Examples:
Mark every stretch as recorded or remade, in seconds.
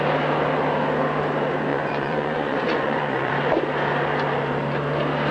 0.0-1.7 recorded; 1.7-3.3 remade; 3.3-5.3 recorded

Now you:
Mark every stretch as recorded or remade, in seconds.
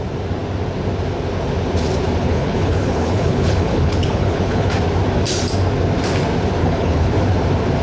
0.0-2.2 recorded; 2.2-4.7 remade; 4.7-6.6 recorded; 6.6-7.1 remade; 7.1-7.8 recorded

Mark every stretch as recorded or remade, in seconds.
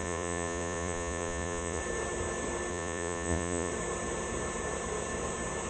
0.0-1.8 remade; 1.8-2.7 recorded; 2.7-3.7 remade; 3.7-5.7 recorded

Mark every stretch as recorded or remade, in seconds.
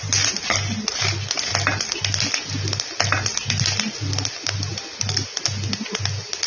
0.0-6.5 recorded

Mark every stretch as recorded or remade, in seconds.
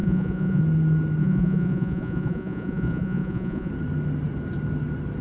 0.0-0.6 remade; 0.6-1.2 recorded; 1.2-3.7 remade; 3.7-5.2 recorded